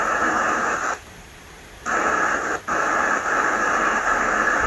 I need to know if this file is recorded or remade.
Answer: remade